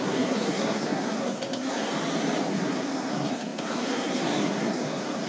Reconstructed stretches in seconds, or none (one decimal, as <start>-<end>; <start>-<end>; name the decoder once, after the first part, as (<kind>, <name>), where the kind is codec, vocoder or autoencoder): 0.0-1.9 (codec, SNAC); 2.5-5.3